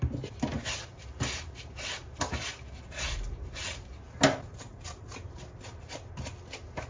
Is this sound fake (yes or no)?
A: no